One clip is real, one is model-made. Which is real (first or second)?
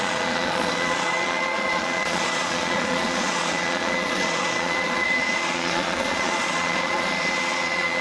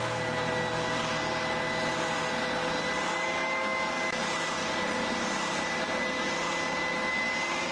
second